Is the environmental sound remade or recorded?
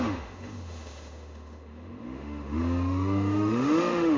remade